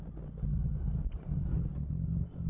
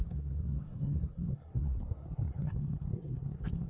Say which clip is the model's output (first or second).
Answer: second